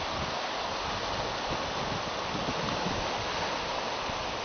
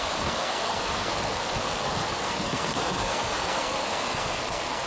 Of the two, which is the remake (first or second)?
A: second